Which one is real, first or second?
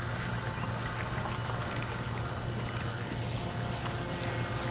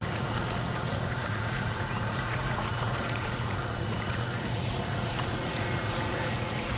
first